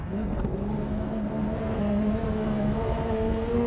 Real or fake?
fake